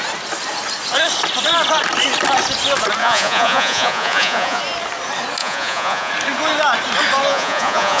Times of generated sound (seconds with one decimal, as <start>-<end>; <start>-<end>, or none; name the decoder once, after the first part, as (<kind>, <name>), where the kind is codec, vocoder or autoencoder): 3.0-4.6 (vocoder, Vocos); 5.4-6.1; 7.3-8.0